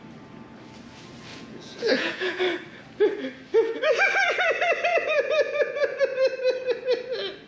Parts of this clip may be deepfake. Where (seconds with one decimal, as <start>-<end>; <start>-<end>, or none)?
1.3-2.4; 4.9-6.0